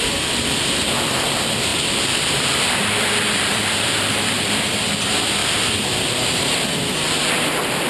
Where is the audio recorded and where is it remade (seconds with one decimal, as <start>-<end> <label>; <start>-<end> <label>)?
0.0-5.4 remade; 5.4-7.9 recorded